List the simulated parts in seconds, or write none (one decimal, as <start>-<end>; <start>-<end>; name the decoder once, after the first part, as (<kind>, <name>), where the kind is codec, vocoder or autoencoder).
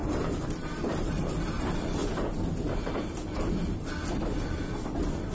0.0-2.0 (vocoder, BigVGAN v2)